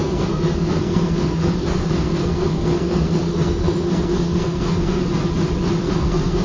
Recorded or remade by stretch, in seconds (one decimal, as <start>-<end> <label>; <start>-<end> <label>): 0.0-5.0 remade; 5.0-5.8 recorded; 5.8-6.4 remade